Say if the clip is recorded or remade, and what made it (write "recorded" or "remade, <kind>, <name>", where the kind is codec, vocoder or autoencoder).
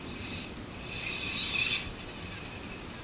recorded